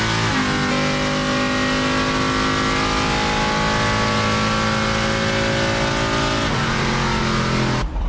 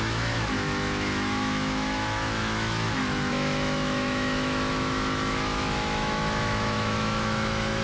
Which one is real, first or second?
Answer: first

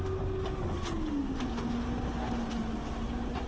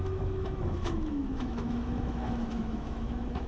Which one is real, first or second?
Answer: first